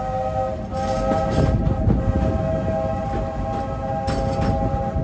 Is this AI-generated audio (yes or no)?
no